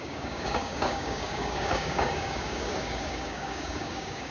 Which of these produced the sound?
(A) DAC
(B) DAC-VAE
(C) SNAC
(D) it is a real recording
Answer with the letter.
A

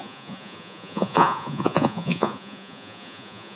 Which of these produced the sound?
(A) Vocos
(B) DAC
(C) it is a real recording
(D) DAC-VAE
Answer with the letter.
A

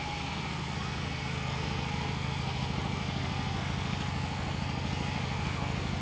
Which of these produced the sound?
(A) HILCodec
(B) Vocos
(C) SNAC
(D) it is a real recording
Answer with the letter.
C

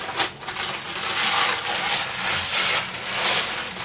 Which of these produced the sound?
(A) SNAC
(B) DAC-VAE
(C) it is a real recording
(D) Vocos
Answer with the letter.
C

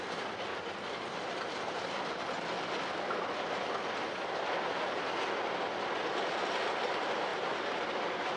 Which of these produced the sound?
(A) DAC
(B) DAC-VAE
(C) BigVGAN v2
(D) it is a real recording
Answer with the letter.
D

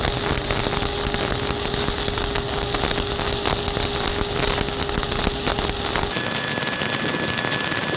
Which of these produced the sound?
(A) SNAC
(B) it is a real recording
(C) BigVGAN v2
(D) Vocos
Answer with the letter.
B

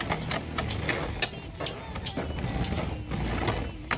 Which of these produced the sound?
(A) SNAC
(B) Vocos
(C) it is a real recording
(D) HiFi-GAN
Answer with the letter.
C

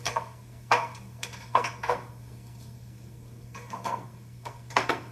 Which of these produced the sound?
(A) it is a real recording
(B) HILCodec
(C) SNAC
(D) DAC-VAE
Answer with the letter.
C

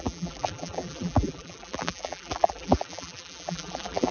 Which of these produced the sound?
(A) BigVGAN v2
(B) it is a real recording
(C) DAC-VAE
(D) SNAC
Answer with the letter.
A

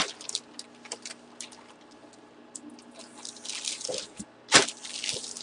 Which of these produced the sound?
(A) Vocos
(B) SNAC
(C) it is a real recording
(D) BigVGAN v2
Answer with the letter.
C